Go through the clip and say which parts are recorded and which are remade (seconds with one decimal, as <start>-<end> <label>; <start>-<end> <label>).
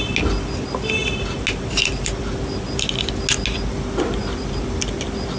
0.0-5.4 recorded